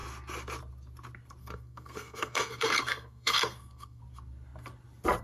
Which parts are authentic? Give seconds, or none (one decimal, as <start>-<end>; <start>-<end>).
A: 0.0-1.4; 4.0-5.2